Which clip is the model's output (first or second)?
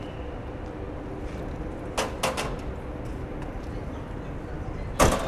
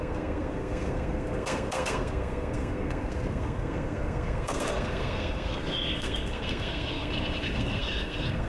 second